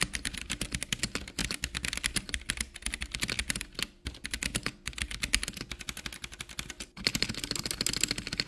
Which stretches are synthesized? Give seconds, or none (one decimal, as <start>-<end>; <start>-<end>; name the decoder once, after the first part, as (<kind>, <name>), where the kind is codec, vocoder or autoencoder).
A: none